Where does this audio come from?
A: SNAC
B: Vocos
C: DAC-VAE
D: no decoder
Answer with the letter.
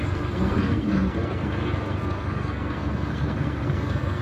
A